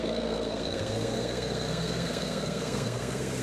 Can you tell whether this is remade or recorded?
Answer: remade